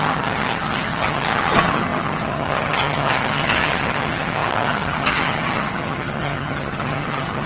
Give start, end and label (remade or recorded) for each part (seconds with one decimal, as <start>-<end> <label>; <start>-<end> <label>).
0.0-7.5 remade